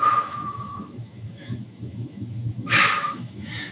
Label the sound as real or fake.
fake